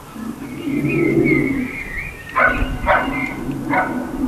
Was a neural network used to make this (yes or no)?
no